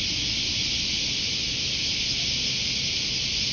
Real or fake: real